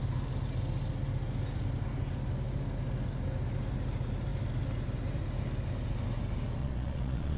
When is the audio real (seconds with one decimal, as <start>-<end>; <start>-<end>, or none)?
0.0-6.6